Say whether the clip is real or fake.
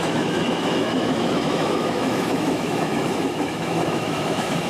fake